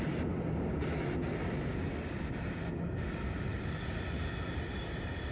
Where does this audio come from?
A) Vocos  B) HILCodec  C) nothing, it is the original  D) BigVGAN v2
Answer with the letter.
C